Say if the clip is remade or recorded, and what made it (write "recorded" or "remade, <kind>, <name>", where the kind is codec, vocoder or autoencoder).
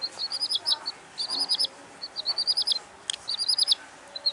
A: recorded